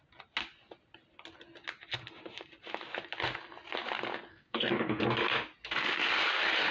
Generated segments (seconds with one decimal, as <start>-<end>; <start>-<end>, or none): 4.3-5.0